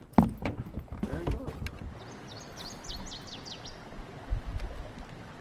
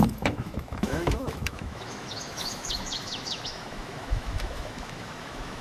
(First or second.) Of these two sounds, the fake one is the second